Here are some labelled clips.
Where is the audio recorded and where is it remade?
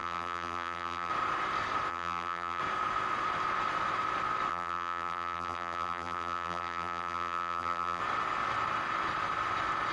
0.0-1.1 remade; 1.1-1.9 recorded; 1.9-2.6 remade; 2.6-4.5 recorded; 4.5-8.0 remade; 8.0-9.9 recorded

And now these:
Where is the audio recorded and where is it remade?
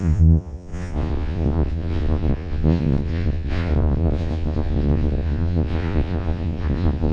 0.0-7.1 remade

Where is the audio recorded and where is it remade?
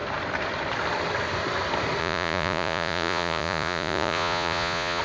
0.0-2.0 recorded; 2.0-5.0 remade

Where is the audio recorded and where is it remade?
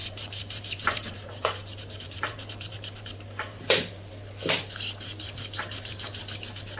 0.0-4.1 remade; 4.1-6.8 recorded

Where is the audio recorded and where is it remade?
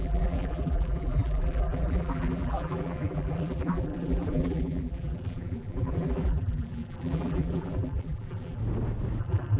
0.0-8.6 remade; 8.6-9.2 recorded; 9.2-9.6 remade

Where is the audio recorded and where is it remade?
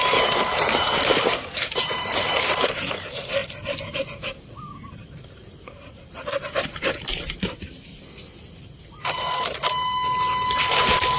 0.0-7.9 remade; 7.9-11.2 recorded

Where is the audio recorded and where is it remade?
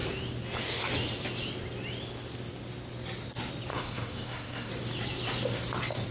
0.0-3.7 recorded; 3.7-4.7 remade; 4.7-6.1 recorded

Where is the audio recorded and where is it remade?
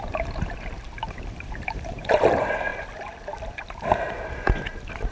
0.0-2.7 remade; 2.7-3.8 recorded; 3.8-5.1 remade